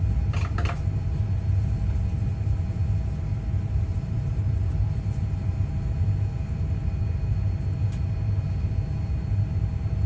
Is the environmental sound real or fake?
real